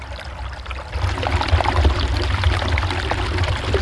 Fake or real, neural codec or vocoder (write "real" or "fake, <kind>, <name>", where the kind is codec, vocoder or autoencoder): real